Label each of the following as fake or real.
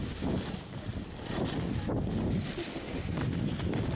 real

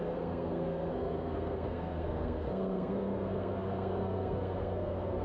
fake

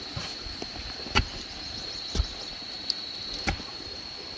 real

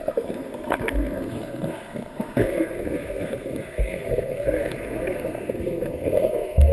fake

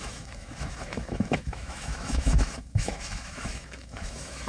fake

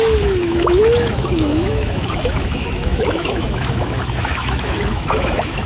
fake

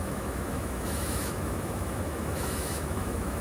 fake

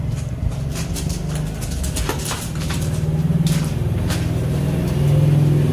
real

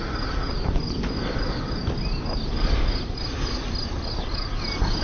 real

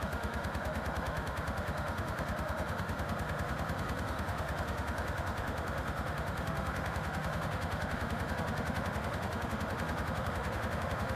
fake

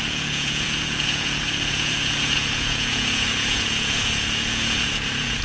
fake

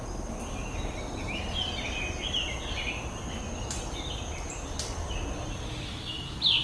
real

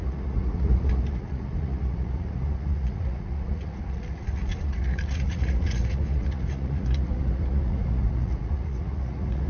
fake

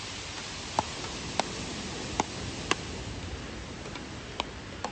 real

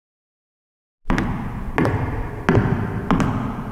real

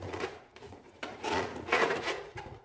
fake